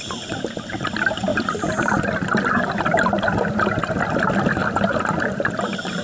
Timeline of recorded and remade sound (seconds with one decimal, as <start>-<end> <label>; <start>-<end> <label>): 0.0-6.0 recorded